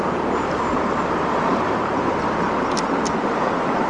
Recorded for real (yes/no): yes